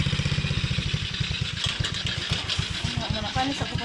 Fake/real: real